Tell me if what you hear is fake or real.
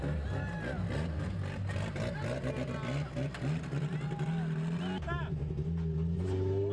real